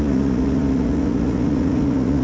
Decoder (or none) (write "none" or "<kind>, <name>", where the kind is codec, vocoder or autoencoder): vocoder, Vocos